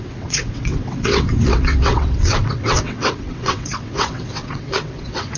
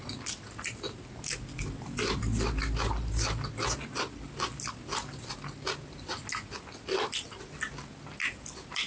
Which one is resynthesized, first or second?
first